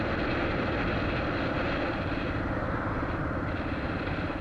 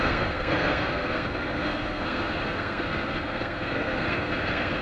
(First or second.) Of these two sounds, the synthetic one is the second